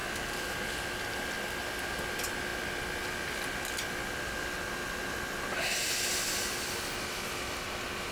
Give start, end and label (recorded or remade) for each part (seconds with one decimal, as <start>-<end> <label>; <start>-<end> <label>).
0.0-8.1 recorded